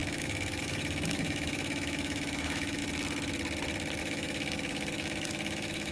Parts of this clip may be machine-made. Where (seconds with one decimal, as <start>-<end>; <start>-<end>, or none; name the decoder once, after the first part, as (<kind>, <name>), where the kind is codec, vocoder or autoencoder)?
0.0-2.8 (autoencoder, DAC-VAE); 4.0-5.9